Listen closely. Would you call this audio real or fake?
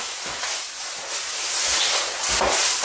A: real